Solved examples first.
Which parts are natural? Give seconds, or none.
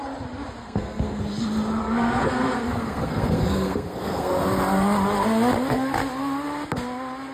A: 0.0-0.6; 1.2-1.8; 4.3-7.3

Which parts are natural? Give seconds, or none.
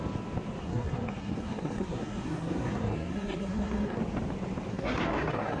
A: 0.0-0.6; 4.0-4.7